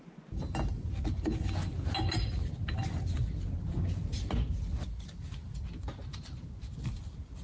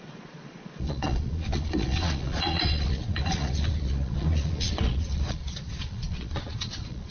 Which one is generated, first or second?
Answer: second